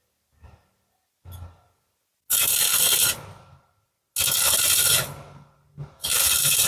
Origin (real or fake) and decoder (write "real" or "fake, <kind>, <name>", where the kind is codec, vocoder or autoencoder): real